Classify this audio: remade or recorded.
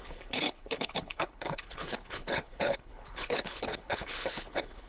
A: remade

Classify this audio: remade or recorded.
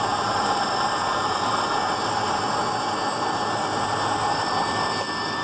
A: recorded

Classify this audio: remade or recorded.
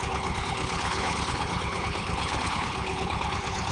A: remade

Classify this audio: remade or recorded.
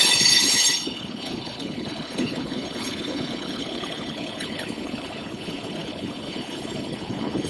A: remade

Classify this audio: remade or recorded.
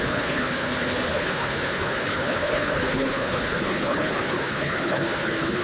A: remade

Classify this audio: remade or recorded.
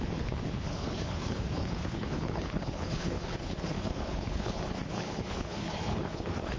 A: remade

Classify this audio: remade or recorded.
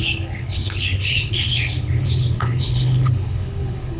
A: remade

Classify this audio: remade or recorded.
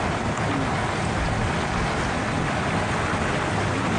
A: recorded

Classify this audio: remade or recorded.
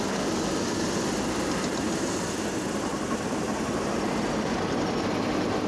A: recorded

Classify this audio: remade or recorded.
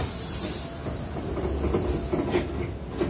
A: recorded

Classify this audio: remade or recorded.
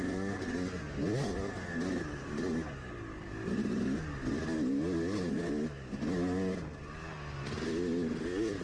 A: recorded